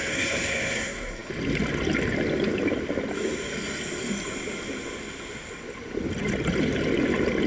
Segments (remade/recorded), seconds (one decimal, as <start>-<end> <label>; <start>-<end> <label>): 0.0-1.3 remade; 1.3-7.5 recorded